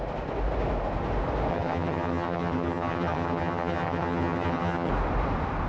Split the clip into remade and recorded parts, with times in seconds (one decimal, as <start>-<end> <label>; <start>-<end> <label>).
0.0-1.5 recorded; 1.5-4.9 remade; 4.9-5.7 recorded